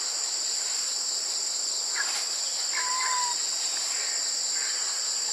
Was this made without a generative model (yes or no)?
yes